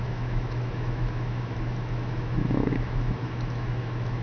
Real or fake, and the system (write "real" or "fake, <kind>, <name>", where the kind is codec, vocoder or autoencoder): fake, autoencoder, DAC-VAE